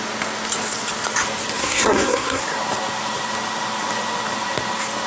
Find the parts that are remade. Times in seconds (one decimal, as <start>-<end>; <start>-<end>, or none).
1.6-2.4